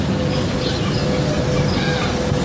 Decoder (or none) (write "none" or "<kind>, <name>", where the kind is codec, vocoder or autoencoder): none